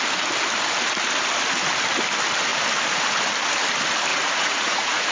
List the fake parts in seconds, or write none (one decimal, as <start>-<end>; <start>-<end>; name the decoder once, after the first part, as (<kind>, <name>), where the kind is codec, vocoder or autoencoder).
4.1-5.1 (vocoder, Vocos)